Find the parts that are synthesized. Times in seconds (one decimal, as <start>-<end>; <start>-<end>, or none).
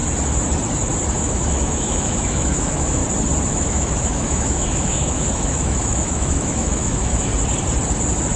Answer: 1.2-3.0; 3.5-7.3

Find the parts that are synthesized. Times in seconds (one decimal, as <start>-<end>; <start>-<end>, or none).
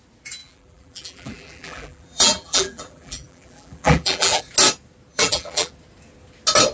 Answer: 0.4-4.4; 5.1-5.7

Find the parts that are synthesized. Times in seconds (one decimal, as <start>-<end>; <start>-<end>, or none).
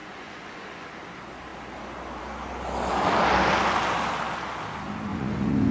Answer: 0.0-0.9; 5.1-5.7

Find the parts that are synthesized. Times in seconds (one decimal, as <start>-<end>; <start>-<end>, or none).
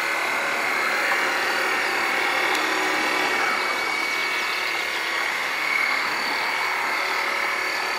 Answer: 5.3-6.1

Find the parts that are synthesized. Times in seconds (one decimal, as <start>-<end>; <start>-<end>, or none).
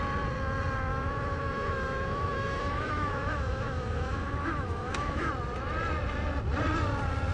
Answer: 0.9-5.3